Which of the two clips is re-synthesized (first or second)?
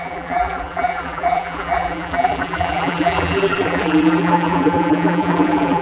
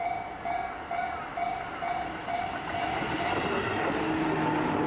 first